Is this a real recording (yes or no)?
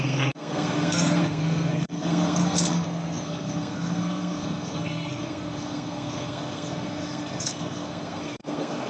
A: no